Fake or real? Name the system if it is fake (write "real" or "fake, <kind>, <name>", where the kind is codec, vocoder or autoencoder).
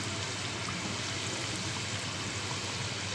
real